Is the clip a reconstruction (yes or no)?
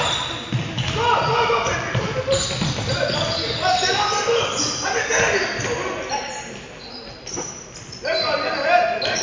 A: no